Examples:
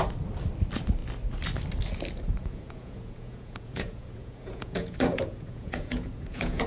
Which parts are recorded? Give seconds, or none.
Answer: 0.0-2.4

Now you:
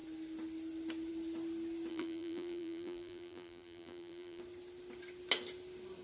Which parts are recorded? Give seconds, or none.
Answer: 0.0-1.9; 4.4-6.0

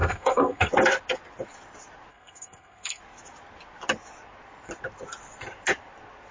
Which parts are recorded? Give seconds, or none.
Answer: 0.7-2.1; 3.0-6.3

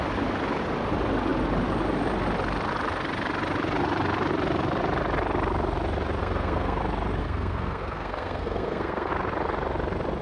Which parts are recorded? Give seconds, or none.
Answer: 0.0-6.2; 6.8-7.2; 9.1-10.2

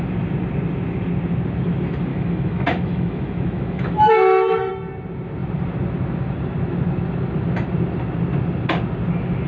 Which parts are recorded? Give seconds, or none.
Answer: 0.0-2.1; 4.7-9.5